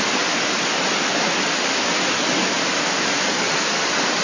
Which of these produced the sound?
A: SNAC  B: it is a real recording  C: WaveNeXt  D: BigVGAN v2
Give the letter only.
B